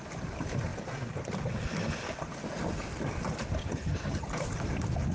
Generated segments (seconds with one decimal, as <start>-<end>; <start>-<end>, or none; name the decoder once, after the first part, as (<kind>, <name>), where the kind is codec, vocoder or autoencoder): 3.6-4.3 (vocoder, HiFi-GAN)